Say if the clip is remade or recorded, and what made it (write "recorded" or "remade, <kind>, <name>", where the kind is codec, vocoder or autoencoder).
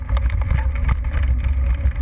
recorded